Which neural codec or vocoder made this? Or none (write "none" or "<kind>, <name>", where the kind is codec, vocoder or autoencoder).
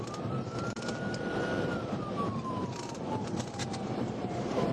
vocoder, BigVGAN v2